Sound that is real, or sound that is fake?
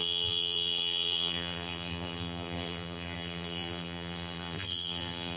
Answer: fake